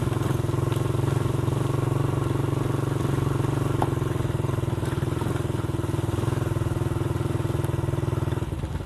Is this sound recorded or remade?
recorded